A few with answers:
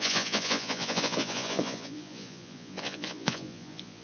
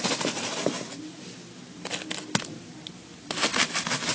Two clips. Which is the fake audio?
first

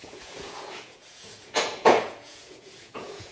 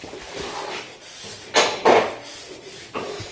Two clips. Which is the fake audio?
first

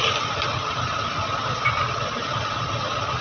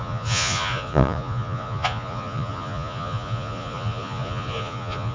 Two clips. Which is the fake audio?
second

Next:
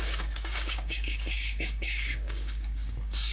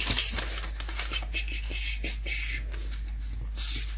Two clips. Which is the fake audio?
first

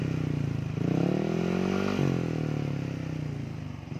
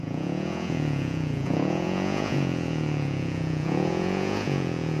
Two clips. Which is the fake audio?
second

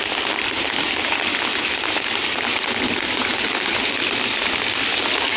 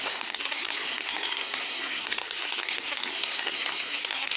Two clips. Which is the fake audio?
second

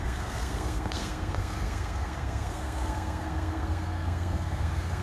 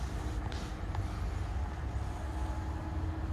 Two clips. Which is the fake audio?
first